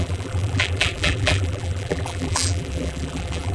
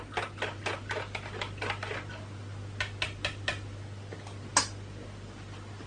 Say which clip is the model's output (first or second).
first